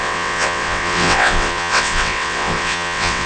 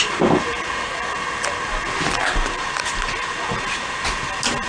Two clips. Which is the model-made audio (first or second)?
first